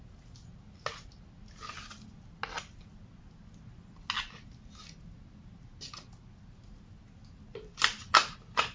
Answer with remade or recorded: recorded